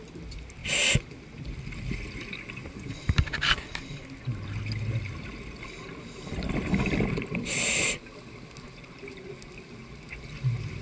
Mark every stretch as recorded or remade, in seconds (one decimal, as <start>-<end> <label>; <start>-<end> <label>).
0.0-10.8 recorded